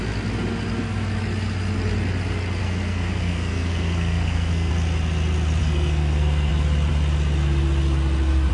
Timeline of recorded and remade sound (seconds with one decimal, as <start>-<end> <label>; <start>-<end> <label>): 0.0-2.6 recorded; 2.6-4.7 remade; 4.7-5.6 recorded; 5.6-6.5 remade; 6.5-8.5 recorded

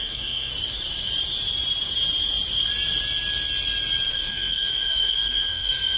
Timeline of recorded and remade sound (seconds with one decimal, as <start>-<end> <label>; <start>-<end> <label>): 0.0-0.5 remade; 0.5-4.1 recorded; 4.1-6.0 remade